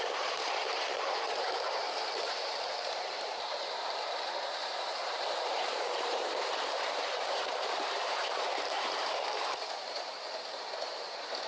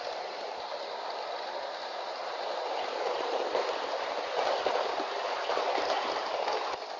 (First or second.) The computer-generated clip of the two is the first